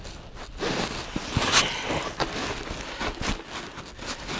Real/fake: real